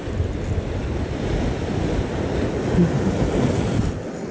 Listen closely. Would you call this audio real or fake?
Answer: real